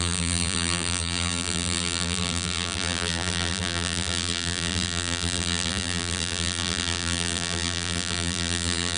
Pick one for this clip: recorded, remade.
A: remade